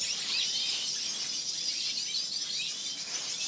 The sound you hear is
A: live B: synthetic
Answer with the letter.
A